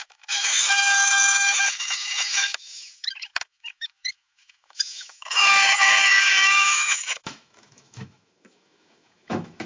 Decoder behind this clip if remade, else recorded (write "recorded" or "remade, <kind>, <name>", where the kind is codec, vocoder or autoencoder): remade, autoencoder, DAC-VAE